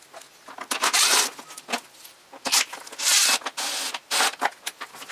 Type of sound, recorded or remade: recorded